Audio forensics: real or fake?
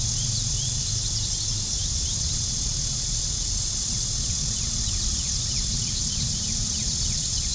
fake